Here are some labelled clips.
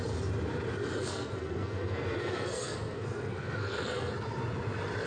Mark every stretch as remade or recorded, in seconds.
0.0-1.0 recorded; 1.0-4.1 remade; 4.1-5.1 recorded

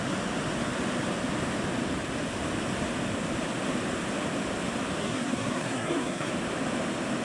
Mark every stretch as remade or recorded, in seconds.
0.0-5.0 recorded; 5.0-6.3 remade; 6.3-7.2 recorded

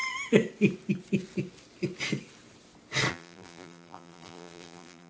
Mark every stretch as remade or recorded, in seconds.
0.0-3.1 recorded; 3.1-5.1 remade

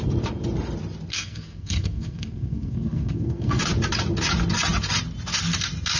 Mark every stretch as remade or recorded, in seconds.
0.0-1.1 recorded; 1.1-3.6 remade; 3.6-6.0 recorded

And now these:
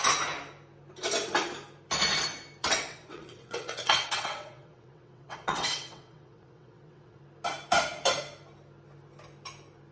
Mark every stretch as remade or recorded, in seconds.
0.0-2.6 recorded; 2.6-7.2 remade; 7.2-9.9 recorded

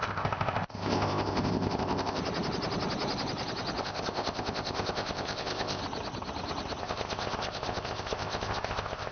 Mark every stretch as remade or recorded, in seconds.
0.0-2.2 remade; 2.2-3.8 recorded; 3.8-5.8 remade; 5.8-6.8 recorded; 6.8-9.1 remade

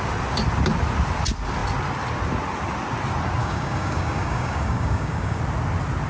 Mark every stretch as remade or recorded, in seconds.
0.0-3.4 recorded; 3.4-5.4 remade; 5.4-6.1 recorded

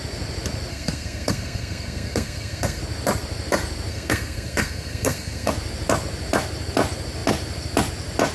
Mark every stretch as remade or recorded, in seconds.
0.0-0.7 recorded; 0.7-2.8 remade; 2.8-3.9 recorded; 3.9-5.5 remade; 5.5-8.3 recorded